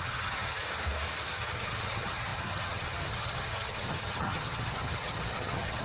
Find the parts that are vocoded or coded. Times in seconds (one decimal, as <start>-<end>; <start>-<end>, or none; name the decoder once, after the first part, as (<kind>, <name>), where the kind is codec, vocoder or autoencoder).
0.0-0.6 (vocoder, HiFi-GAN); 1.4-5.8